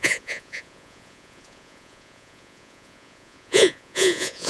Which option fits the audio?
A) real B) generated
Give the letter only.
B